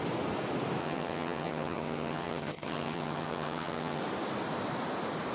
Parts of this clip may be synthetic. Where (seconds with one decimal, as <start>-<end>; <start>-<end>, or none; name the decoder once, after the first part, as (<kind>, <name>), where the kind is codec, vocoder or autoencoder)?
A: 0.8-4.0 (vocoder, HiFi-GAN)